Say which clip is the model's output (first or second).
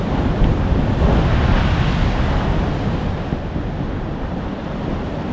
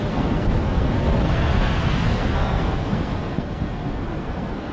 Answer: second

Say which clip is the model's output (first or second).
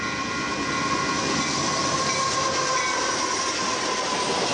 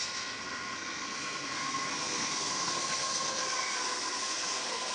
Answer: second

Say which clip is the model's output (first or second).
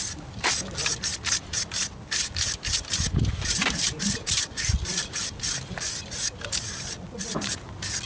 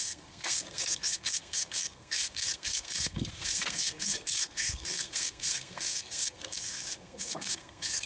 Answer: second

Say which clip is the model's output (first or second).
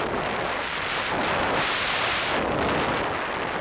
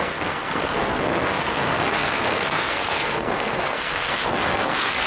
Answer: second